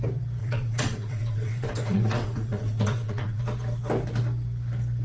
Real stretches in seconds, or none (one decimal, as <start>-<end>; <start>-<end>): 0.0-0.4; 3.4-5.0